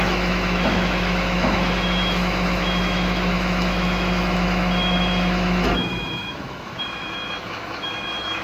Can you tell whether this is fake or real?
fake